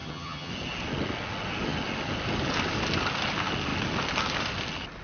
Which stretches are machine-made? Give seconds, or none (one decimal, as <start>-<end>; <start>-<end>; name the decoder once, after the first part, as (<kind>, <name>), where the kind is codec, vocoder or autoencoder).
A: 0.0-0.5 (vocoder, HiFi-GAN)